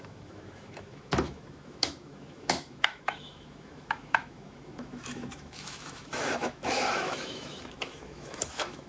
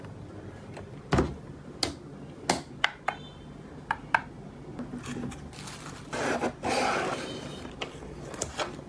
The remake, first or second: first